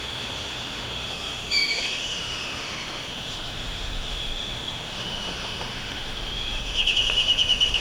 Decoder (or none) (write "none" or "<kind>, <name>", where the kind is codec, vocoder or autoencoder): autoencoder, DAC-VAE